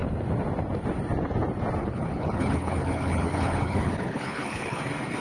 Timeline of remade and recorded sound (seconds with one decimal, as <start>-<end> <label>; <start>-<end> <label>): 0.0-1.8 recorded; 1.8-4.8 remade; 4.8-5.2 recorded